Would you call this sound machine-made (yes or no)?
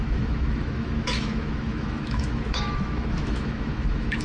yes